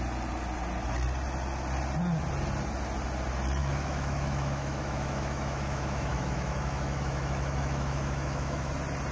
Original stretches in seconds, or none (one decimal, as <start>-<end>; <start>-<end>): 0.0-3.6; 8.7-9.1